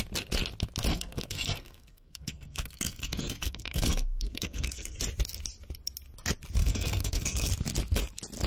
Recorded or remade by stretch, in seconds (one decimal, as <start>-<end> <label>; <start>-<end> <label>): 0.0-0.9 recorded; 0.9-5.0 remade; 5.0-6.6 recorded; 6.6-7.5 remade; 7.5-8.5 recorded